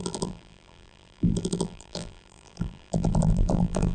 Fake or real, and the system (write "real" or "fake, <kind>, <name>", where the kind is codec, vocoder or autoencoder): fake, vocoder, BigVGAN v2